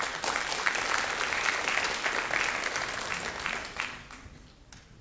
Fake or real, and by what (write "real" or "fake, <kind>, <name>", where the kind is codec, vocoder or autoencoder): real